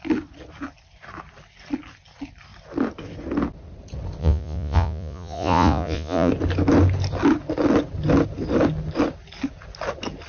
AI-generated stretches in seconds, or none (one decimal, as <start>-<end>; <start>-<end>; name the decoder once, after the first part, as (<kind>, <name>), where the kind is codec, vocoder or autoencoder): 4.2-6.3 (vocoder, Vocos)